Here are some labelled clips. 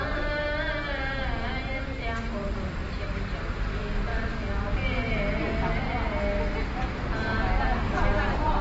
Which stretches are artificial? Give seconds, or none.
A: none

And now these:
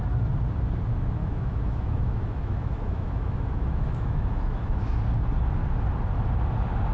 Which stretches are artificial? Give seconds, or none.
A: 1.2-5.0 (autoencoder, DAC-VAE)

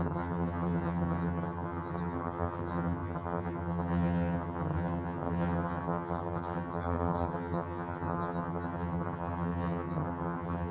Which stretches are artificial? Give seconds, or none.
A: 0.0-10.7 (vocoder, HiFi-GAN)